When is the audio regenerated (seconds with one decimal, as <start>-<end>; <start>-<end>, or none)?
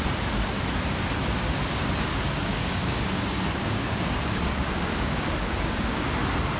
2.1-6.1